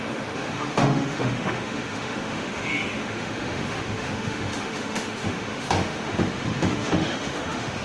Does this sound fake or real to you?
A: fake